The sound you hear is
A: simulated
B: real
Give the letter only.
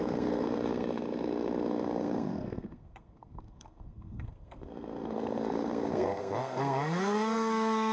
A